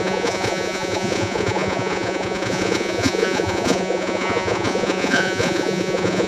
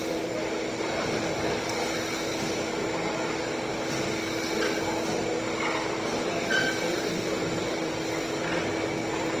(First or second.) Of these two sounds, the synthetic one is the first